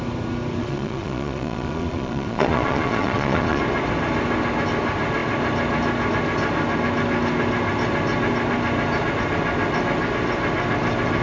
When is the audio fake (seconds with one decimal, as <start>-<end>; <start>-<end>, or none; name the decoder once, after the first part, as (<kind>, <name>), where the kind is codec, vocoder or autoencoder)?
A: 0.6-3.6 (vocoder, Vocos)